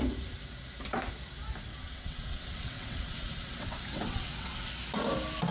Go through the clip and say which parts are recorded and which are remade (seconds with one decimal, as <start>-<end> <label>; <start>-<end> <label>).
0.0-1.7 recorded; 1.7-4.7 remade; 4.7-5.5 recorded